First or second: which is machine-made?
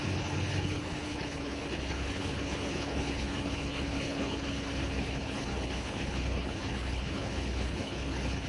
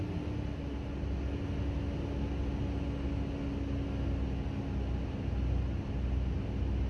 first